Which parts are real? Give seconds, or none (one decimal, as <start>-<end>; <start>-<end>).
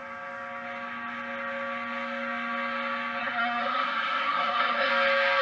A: 0.0-3.2; 4.9-5.4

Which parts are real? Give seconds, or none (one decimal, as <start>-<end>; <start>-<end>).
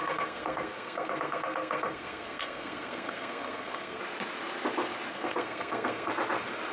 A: 4.0-5.1; 6.1-6.7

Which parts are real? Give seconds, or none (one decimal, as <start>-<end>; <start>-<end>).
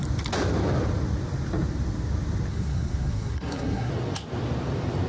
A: 0.0-2.5; 3.9-5.1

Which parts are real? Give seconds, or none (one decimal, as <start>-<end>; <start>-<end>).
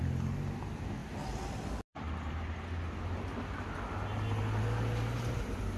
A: 0.0-5.8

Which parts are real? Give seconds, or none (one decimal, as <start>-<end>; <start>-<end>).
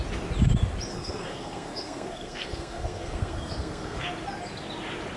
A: 0.0-0.9; 4.0-5.2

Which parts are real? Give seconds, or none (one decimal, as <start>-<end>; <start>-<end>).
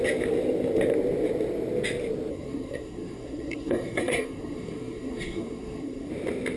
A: 0.0-2.3; 6.1-6.6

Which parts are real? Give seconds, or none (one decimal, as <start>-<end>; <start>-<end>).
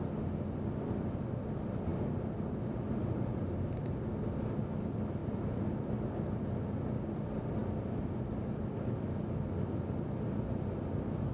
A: 0.0-11.3